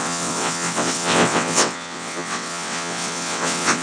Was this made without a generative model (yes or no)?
no